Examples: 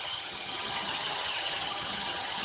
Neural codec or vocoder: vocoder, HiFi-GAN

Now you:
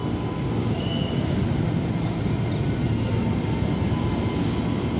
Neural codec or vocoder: none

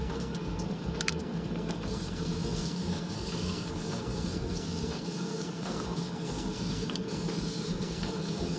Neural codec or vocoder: codec, SNAC